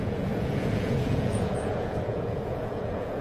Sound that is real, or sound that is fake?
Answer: fake